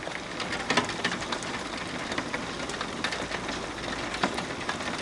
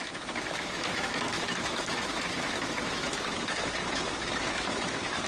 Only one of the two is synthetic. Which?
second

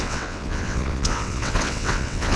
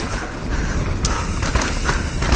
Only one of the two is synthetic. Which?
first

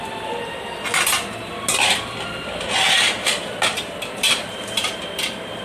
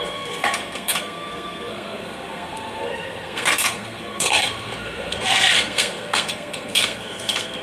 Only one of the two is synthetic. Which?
second